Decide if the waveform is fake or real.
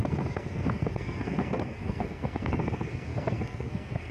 fake